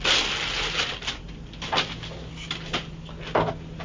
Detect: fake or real real